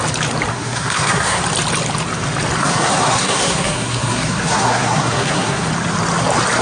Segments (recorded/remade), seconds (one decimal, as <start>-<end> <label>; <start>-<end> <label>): 0.0-0.5 recorded; 0.5-1.4 remade; 1.4-2.6 recorded; 2.6-5.7 remade; 5.7-6.6 recorded